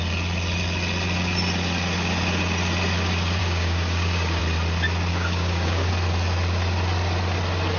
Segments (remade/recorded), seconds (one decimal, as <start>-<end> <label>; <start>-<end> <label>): 0.0-3.4 recorded; 3.4-4.4 remade; 4.4-5.1 recorded; 5.1-5.9 remade; 5.9-7.8 recorded